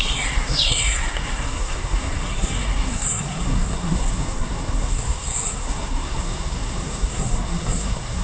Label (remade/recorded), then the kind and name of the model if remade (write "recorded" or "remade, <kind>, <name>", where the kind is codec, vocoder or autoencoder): remade, codec, SNAC